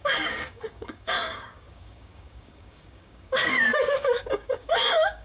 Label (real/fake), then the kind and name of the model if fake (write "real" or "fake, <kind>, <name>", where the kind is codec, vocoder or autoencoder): fake, codec, DAC